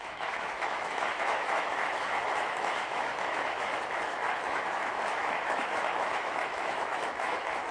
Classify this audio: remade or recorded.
remade